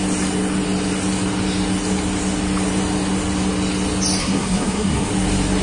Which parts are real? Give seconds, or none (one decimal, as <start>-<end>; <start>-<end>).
0.0-4.2; 5.1-5.6